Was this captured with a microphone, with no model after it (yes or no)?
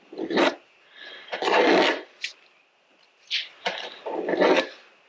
yes